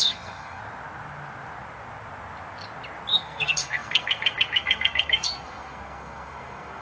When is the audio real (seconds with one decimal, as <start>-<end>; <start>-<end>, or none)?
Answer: 0.6-3.1